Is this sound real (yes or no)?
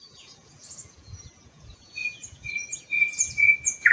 no